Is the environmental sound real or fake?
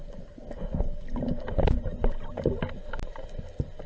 real